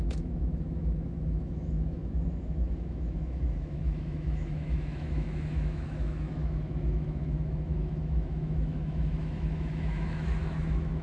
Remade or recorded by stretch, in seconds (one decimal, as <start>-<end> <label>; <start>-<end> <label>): 0.0-11.0 remade